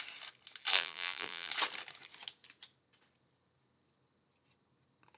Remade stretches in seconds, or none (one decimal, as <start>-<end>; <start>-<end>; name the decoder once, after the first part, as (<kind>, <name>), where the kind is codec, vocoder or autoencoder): 0.7-1.5 (vocoder, BigVGAN v2)